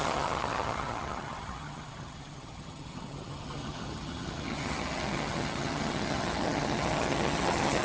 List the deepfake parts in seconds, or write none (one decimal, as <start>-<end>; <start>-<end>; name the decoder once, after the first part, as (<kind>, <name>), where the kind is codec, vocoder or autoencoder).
0.0-7.8 (vocoder, HiFi-GAN)